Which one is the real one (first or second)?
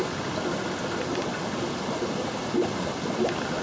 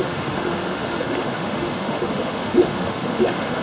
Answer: first